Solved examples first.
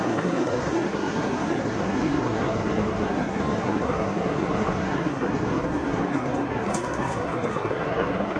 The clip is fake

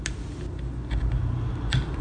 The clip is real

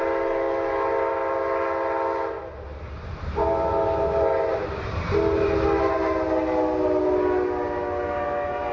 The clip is real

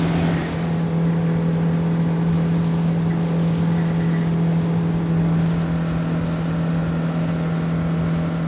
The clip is real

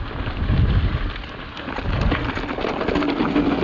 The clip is real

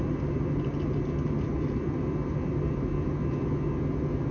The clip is real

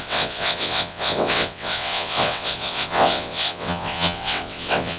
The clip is fake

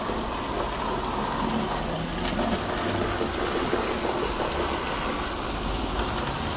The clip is real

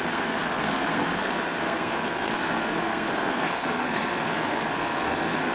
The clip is fake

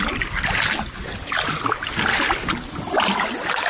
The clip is real